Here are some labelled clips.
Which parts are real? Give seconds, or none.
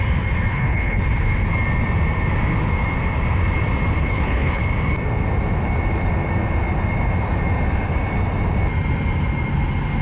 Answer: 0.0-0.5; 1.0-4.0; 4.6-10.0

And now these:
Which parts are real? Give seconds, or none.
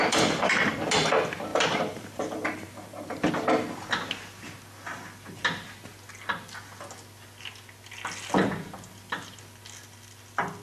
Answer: 0.6-1.5; 3.3-10.6